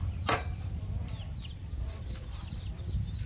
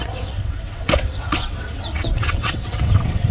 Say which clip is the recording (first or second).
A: first